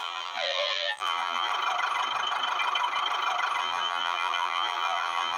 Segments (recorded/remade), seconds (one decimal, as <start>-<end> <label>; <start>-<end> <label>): 0.0-1.5 remade; 1.5-3.6 recorded; 3.6-5.4 remade